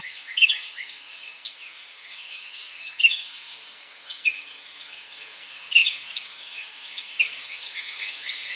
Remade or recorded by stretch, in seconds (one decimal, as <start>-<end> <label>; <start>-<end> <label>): 0.0-8.6 remade